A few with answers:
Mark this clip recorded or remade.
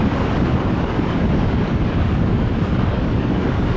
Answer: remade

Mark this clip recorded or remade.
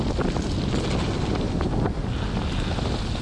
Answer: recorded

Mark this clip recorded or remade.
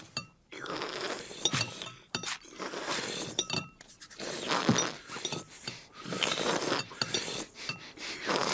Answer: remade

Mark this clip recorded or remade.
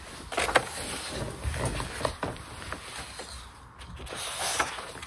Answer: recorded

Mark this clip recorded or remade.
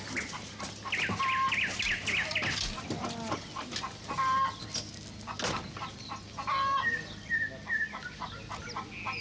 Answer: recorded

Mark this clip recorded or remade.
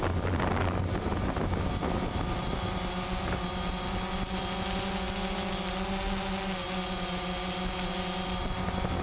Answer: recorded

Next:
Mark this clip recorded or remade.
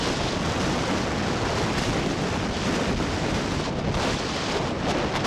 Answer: recorded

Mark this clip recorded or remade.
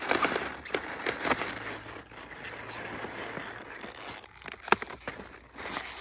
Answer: recorded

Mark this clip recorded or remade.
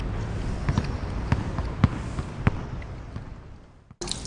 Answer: recorded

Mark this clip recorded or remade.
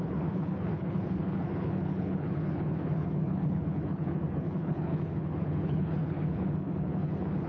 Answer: remade